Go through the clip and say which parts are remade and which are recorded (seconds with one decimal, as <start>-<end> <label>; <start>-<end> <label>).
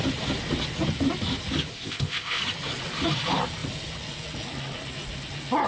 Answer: 0.0-1.7 recorded; 1.7-2.4 remade; 2.4-5.7 recorded